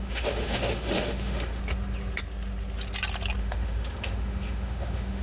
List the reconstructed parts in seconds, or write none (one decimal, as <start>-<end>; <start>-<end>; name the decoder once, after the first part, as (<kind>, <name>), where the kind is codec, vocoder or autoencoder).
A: 0.0-1.6 (autoencoder, DAC-VAE); 3.4-5.2